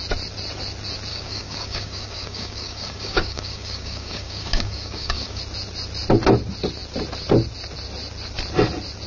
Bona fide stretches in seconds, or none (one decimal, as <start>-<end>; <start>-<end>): 0.0-1.1; 5.4-9.1